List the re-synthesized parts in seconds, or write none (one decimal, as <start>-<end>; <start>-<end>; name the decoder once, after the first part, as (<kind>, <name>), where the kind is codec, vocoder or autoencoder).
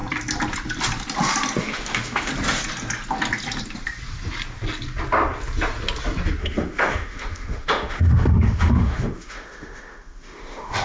1.6-2.3 (autoencoder, DAC-VAE); 6.4-10.8